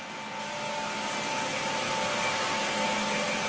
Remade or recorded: recorded